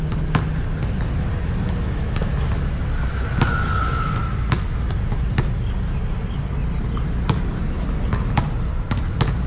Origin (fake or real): real